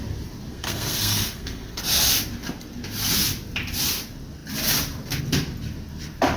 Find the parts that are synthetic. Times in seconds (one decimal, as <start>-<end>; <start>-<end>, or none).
0.5-1.8